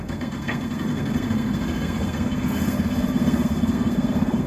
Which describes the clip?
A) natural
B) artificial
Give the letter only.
B